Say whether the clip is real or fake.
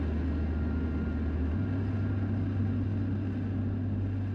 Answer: real